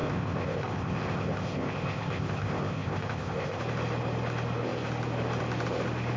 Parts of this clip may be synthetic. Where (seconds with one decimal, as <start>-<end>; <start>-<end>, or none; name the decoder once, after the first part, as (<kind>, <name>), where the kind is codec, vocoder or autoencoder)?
0.0-3.6 (codec, ZipCodec)